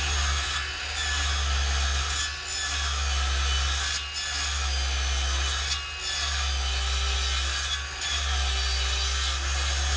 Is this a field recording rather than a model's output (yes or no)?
yes